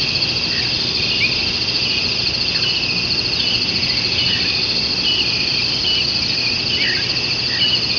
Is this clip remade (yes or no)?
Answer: no